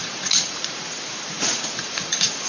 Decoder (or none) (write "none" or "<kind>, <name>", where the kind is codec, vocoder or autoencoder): vocoder, Vocos